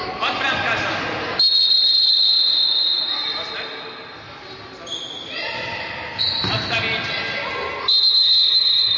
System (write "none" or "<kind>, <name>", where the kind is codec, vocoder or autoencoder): none